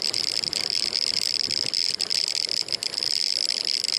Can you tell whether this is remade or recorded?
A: recorded